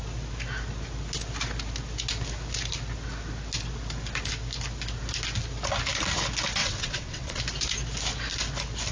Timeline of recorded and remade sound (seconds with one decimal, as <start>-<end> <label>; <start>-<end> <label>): 0.0-6.6 recorded; 6.6-7.4 remade; 7.4-8.9 recorded